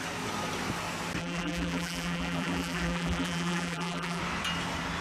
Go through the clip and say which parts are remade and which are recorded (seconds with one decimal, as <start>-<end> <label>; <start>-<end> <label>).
0.0-1.2 recorded; 1.2-4.2 remade; 4.2-5.0 recorded